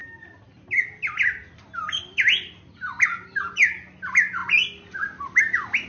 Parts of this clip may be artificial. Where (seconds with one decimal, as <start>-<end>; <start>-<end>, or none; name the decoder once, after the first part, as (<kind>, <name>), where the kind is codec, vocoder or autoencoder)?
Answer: none